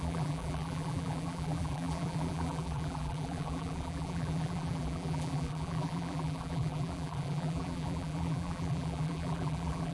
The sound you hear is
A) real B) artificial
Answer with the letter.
B